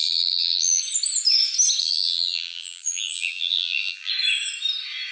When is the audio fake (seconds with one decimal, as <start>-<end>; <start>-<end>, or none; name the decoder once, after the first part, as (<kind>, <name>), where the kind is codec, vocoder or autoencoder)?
0.0-0.8 (vocoder, BigVGAN v2); 1.8-4.1